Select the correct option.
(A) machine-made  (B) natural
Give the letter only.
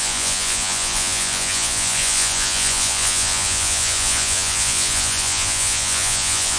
A